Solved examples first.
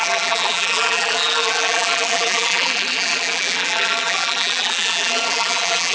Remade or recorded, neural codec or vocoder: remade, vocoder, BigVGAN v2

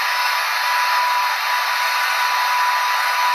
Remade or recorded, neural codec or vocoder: recorded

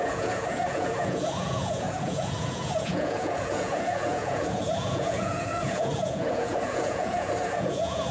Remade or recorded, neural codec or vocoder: remade, vocoder, Vocos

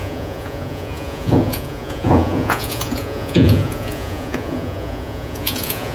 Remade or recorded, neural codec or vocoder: remade, vocoder, Vocos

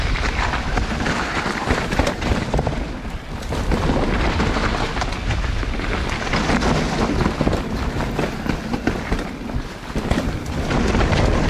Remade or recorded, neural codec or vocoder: recorded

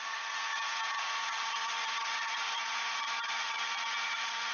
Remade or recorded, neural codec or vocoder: remade, vocoder, Vocos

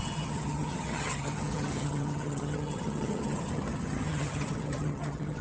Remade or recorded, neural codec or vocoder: remade, vocoder, HiFi-GAN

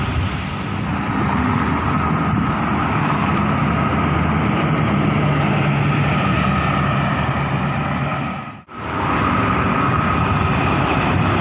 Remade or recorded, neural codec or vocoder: recorded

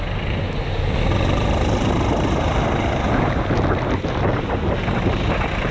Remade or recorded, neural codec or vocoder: recorded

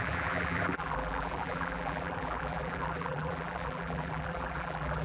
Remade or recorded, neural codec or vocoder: remade, vocoder, BigVGAN v2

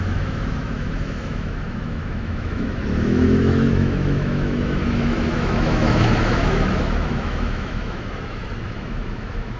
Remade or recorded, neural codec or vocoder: remade, autoencoder, DAC-VAE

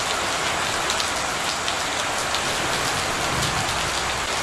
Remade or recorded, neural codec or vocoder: recorded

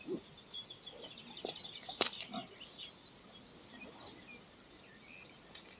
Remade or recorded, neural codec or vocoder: recorded